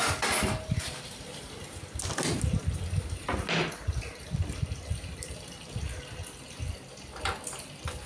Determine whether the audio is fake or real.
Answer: real